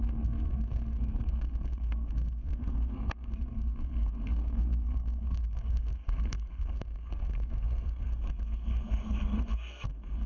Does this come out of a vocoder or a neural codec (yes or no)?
yes